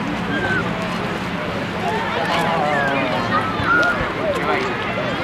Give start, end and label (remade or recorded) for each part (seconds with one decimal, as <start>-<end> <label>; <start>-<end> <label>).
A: 0.0-5.2 recorded